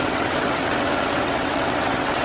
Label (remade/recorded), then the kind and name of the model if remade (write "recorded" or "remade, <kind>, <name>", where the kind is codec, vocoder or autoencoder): remade, vocoder, WaveNeXt